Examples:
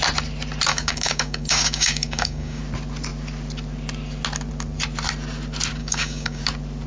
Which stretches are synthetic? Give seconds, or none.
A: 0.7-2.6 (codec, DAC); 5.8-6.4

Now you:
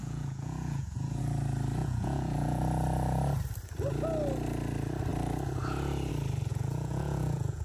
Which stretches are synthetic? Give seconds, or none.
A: 0.0-1.2 (vocoder, Vocos); 1.8-2.6; 6.5-7.6

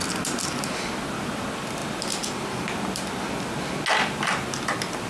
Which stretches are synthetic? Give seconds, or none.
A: none

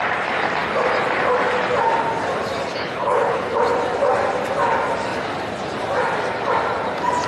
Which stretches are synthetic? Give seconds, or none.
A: 2.7-3.6 (codec, HILCodec)

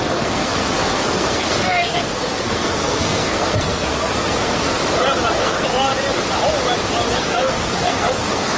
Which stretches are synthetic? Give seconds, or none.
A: 0.0-4.8 (codec, SNAC); 5.4-5.9; 7.1-8.6